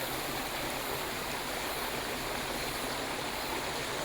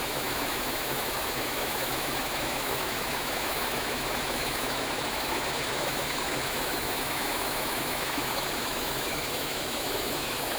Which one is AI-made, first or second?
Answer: second